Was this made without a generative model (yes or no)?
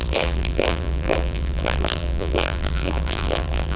no